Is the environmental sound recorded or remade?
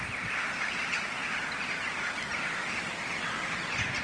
recorded